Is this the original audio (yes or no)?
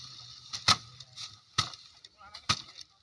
yes